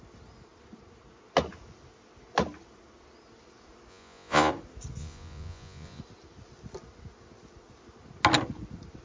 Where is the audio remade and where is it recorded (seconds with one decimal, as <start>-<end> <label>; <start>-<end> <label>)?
0.0-3.9 recorded; 3.9-4.5 remade; 4.5-5.0 recorded; 5.0-6.0 remade; 6.0-9.0 recorded